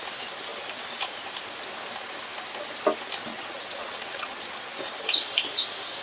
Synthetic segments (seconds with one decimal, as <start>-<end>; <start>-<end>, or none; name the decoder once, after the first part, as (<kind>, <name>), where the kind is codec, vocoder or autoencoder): 3.3-4.4 (vocoder, WaveNeXt)